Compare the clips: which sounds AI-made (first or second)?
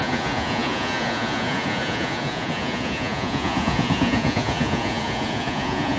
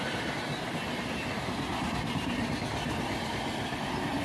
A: first